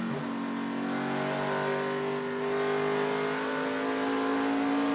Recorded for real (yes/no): yes